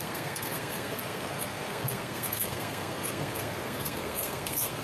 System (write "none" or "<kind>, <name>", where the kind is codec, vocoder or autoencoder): codec, SNAC